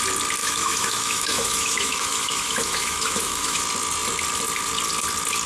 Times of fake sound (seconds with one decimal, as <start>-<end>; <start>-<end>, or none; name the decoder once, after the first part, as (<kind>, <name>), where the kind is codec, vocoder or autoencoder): 0.4-3.6 (autoencoder, DAC-VAE)